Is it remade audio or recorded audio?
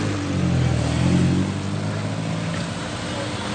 recorded